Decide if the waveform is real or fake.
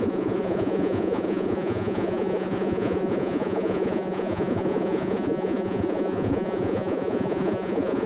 fake